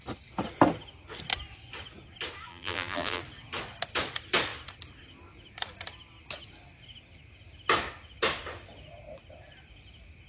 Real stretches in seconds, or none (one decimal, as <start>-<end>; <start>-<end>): 0.0-2.5; 3.2-10.3